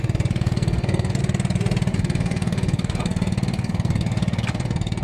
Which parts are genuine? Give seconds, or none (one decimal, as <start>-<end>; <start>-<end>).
1.2-1.9